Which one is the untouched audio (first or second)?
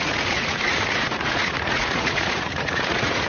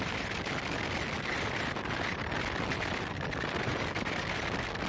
second